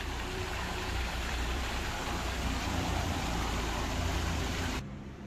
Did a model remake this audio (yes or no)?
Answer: yes